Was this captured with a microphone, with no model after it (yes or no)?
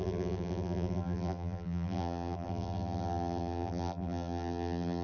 no